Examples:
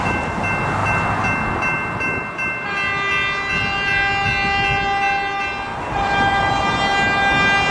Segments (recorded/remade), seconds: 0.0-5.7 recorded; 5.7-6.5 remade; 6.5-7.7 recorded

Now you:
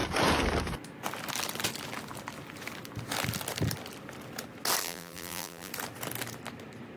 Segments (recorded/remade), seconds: 0.0-4.8 recorded; 4.8-5.7 remade; 5.7-7.0 recorded

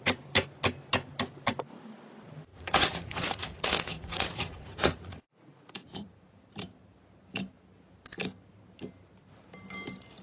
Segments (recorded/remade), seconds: 0.0-2.5 recorded; 2.5-6.4 remade; 6.4-10.2 recorded